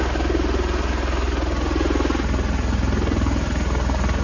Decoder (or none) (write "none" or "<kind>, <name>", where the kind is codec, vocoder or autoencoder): none